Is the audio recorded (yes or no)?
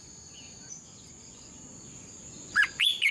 no